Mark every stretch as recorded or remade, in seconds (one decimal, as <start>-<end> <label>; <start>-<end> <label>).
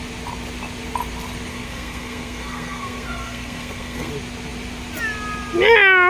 0.0-1.5 recorded; 1.5-4.1 remade; 4.1-6.1 recorded